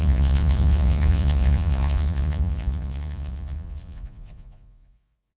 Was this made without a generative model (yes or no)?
no